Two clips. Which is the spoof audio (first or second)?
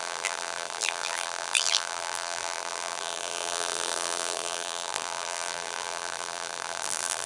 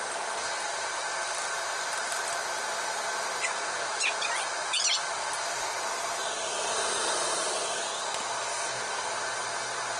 first